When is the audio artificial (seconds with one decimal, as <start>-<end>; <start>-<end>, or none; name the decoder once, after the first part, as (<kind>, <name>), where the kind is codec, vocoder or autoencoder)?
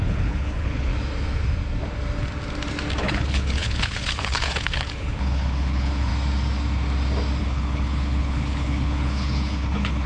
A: 0.0-0.9 (codec, HILCodec); 3.0-6.1; 7.4-10.1